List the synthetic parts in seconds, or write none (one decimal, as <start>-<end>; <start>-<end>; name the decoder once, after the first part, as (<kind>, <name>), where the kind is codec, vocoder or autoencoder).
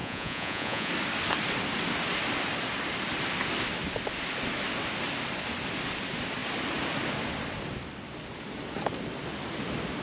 0.0-0.9 (vocoder, Vocos)